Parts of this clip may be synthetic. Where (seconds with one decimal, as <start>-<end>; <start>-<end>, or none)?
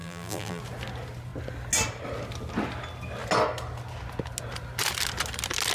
0.0-0.6